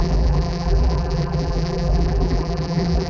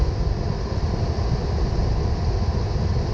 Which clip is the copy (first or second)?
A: first